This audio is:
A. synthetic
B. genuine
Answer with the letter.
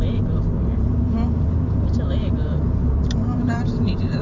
A